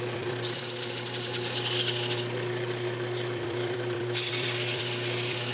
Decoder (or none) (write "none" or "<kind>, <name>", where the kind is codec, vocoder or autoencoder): vocoder, BigVGAN v2